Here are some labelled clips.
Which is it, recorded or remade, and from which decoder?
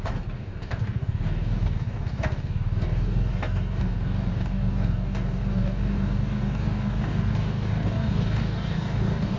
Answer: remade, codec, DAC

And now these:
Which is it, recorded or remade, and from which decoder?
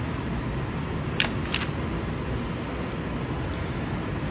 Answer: recorded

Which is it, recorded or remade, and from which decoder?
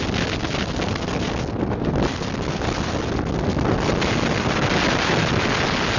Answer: recorded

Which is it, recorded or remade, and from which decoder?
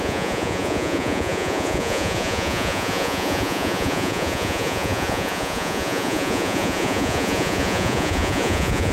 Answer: remade, vocoder, Vocos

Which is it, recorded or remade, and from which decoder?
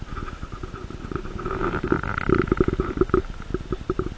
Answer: recorded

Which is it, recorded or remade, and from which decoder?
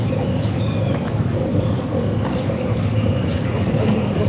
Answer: remade, codec, DAC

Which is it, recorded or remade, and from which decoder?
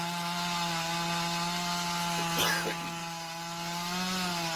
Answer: recorded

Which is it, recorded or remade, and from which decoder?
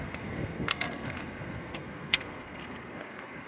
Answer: remade, codec, SNAC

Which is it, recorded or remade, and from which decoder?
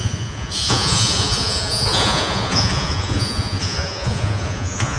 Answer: remade, vocoder, Vocos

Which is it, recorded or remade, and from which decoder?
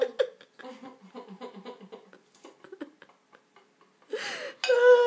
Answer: recorded